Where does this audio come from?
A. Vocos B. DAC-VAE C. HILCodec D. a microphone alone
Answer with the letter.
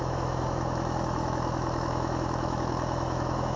B